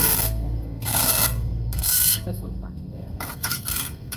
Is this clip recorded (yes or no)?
no